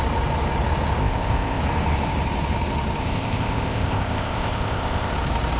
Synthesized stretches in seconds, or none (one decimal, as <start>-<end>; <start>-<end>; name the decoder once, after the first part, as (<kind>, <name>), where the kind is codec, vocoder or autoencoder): 1.0-1.6 (codec, ZipCodec); 3.0-5.1